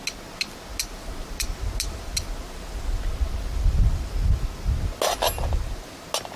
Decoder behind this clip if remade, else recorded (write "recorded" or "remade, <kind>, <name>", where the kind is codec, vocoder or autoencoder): recorded